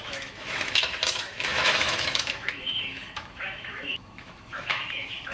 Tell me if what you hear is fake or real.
fake